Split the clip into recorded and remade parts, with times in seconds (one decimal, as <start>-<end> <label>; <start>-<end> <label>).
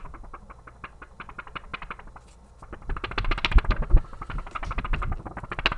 0.0-5.8 recorded